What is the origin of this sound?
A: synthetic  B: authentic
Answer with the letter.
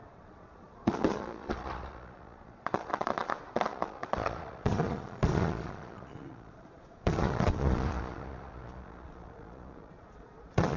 A